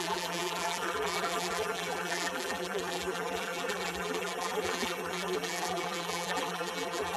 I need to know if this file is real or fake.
fake